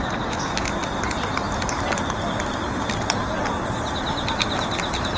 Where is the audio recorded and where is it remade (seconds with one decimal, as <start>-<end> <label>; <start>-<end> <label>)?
0.0-5.2 recorded